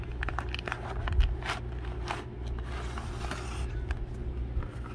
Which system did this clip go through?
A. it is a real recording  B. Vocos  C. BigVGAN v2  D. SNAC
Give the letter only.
A